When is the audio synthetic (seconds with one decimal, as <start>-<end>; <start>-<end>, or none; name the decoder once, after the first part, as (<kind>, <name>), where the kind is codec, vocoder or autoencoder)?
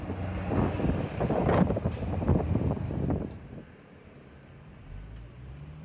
1.4-3.4 (vocoder, BigVGAN v2)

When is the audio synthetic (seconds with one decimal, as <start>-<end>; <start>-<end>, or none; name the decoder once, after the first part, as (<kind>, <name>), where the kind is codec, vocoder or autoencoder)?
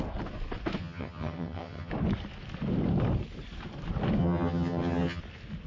0.8-1.9 (vocoder, HiFi-GAN); 4.2-5.2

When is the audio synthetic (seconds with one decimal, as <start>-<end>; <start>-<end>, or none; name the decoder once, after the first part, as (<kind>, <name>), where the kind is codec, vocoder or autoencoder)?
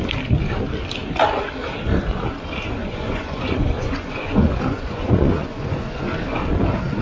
2.8-6.1 (vocoder, Vocos)